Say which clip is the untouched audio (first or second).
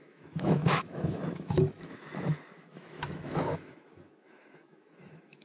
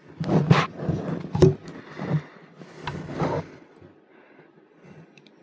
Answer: second